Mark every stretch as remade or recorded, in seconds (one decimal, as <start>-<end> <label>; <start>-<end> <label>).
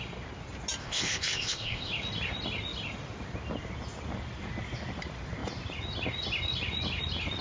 0.0-0.8 recorded; 0.8-1.9 remade; 1.9-7.4 recorded